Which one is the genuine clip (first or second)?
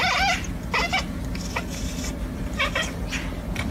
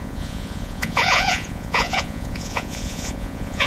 first